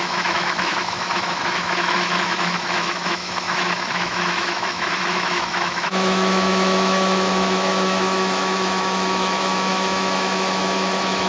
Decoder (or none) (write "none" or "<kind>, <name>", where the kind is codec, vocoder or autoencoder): autoencoder, DAC-VAE